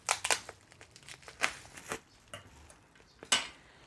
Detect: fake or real real